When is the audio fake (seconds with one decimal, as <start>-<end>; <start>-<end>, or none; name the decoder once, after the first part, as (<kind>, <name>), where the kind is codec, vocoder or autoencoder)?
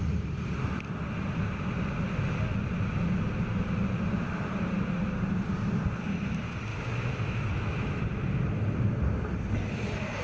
6.7-8.0 (autoencoder, DAC-VAE)